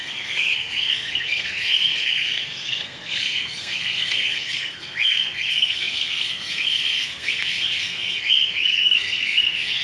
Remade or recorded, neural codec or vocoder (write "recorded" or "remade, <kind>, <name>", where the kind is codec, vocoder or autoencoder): remade, codec, SNAC